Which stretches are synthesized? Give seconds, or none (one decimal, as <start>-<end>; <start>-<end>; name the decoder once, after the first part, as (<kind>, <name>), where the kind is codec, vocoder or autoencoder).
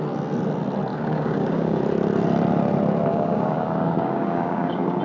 0.9-1.8 (codec, DAC); 3.1-5.0